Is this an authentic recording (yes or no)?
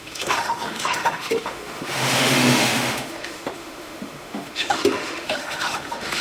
no